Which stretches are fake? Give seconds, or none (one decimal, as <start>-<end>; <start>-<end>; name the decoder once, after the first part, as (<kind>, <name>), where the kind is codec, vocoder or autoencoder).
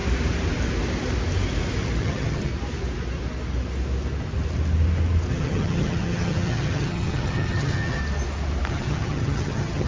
2.0-2.5 (vocoder, HiFi-GAN); 5.3-8.0; 8.7-9.9